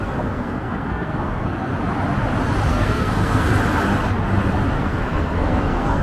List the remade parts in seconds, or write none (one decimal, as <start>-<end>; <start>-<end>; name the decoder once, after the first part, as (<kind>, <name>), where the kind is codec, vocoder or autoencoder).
0.0-1.7 (codec, SNAC); 2.7-3.5; 4.7-6.0